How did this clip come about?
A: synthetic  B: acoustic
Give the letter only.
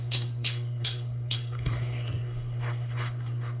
A